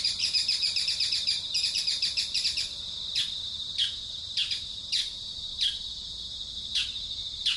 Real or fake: fake